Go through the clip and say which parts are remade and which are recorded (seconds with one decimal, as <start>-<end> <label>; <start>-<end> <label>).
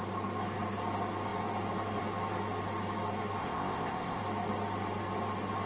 0.0-3.4 recorded; 3.4-4.2 remade; 4.2-5.7 recorded